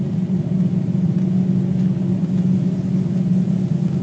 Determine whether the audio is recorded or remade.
recorded